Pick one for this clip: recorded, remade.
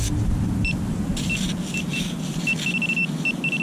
recorded